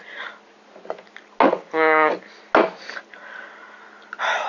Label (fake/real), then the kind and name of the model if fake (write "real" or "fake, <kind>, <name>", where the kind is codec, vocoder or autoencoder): real